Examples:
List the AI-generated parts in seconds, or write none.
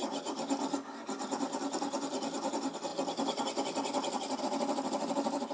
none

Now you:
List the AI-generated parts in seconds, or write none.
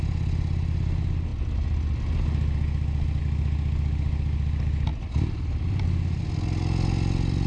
4.9-6.2 (vocoder, BigVGAN v2)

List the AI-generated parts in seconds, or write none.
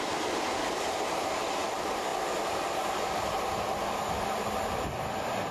2.1-5.5 (vocoder, BigVGAN v2)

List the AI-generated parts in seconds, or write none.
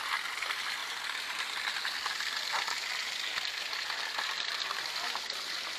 none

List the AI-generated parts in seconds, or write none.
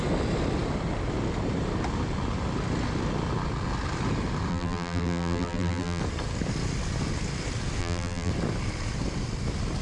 4.5-6.0 (vocoder, BigVGAN v2); 7.8-8.3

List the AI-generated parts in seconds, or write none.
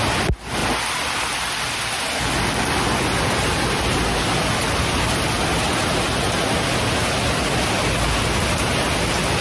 none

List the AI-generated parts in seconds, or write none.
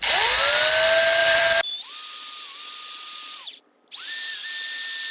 1.2-4.3 (vocoder, BigVGAN v2)